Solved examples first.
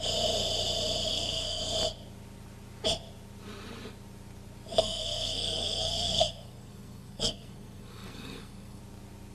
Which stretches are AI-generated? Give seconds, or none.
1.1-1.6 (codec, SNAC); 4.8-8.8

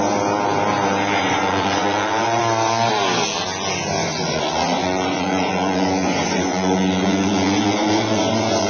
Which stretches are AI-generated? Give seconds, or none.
1.2-2.4 (vocoder, Vocos); 4.0-8.7

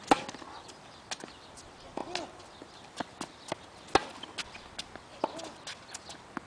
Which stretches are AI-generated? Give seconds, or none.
none

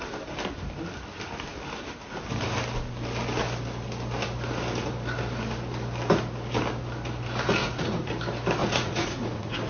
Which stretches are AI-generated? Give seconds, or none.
7.6-8.1 (vocoder, Vocos); 8.6-9.7

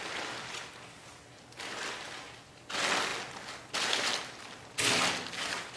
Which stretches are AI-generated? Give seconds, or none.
none

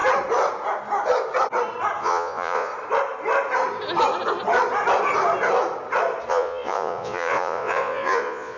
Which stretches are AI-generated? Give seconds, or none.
2.0-2.7 (vocoder, Vocos); 6.3-8.6

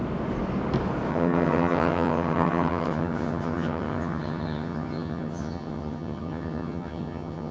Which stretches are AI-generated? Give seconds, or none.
1.1-7.5 (vocoder, HiFi-GAN)